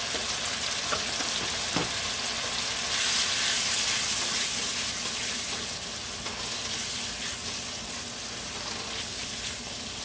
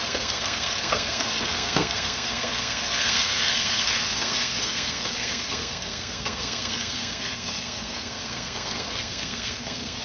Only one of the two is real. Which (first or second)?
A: first